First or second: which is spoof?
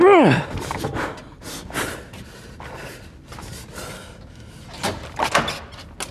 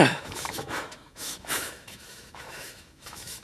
second